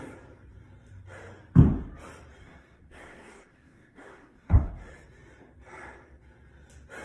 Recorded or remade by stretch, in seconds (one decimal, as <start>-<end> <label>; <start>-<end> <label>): 0.0-2.4 recorded; 2.4-4.7 remade; 4.7-7.0 recorded